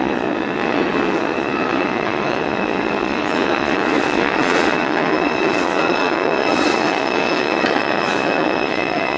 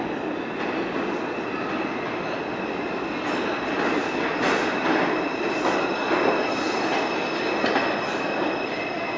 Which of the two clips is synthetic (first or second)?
first